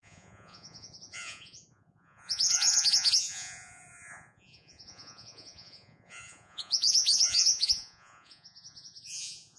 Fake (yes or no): yes